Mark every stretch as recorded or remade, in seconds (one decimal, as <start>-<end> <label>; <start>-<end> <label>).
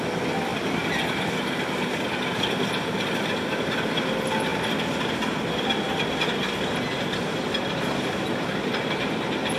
0.0-9.6 recorded